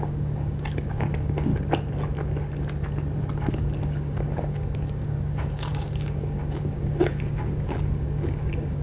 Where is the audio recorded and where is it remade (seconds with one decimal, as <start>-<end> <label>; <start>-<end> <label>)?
0.0-1.5 remade; 1.5-3.5 recorded; 3.5-8.8 remade